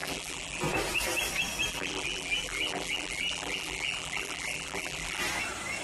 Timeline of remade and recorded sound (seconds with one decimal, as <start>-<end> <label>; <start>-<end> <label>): 0.0-0.6 remade; 0.6-1.7 recorded; 1.7-5.2 remade; 5.2-5.8 recorded